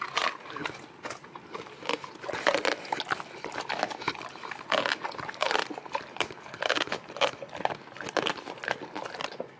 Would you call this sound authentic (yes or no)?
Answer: yes